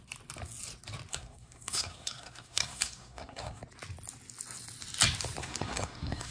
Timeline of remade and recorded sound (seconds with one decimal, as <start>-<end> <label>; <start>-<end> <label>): 0.0-1.1 recorded; 1.1-3.6 remade; 3.6-5.4 recorded; 5.4-6.3 remade